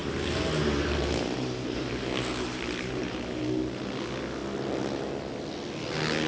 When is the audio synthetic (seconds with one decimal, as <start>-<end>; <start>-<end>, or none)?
0.0-3.4